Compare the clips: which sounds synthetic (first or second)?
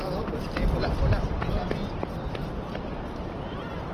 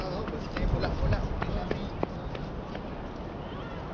first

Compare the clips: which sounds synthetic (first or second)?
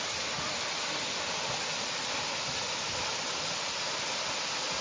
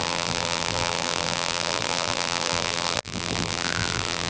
second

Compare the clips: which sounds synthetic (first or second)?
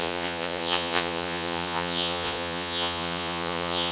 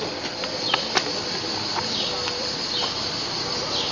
first